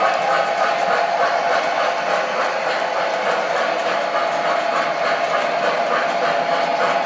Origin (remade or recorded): recorded